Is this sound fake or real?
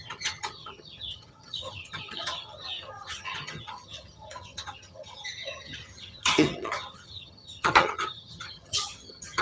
fake